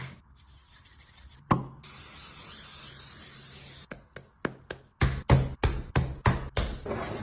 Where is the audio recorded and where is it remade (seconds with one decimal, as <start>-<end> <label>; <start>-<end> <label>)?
0.0-7.2 recorded